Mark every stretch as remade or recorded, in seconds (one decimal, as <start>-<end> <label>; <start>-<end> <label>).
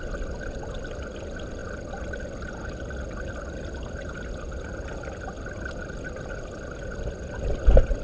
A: 0.0-8.0 recorded